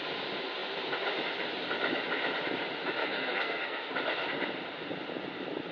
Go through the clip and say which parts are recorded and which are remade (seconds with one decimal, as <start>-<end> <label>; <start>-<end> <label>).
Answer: 0.0-3.0 recorded; 3.0-3.9 remade; 3.9-5.7 recorded